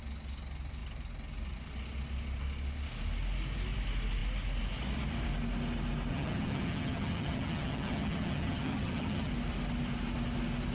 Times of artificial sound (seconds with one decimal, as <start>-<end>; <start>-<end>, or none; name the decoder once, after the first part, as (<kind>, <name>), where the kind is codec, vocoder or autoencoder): 6.1-9.3 (vocoder, HiFi-GAN)